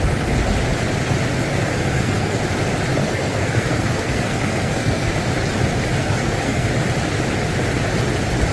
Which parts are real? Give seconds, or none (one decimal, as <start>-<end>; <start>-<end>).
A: 0.0-1.5; 2.4-3.0; 5.1-6.0; 6.7-8.5